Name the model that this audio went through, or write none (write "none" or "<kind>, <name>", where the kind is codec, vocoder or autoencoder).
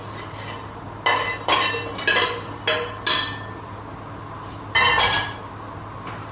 none